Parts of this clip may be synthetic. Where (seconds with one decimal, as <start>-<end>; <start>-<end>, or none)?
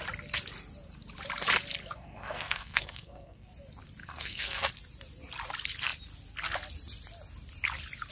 1.8-3.5; 4.0-4.7